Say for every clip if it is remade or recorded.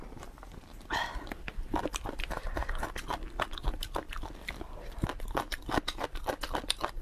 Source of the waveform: remade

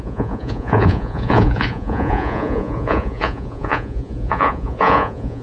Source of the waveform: remade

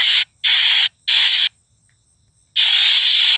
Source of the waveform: recorded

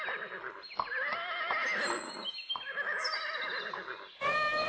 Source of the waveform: recorded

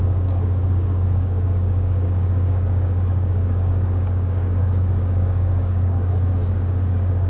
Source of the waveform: remade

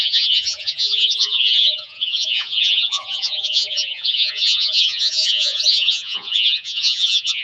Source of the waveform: remade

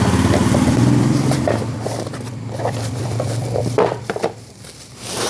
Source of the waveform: remade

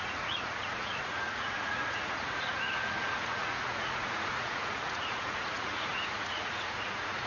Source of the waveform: remade